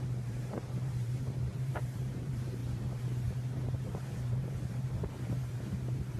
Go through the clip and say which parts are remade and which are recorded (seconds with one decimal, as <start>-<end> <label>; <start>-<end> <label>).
0.0-6.2 remade